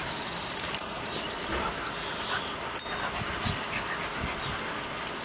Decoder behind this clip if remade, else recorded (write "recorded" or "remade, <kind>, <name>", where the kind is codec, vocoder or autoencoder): recorded